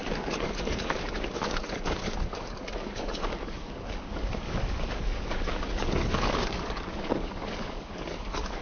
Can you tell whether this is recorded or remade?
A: remade